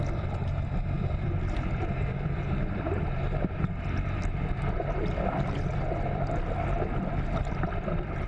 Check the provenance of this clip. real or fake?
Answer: fake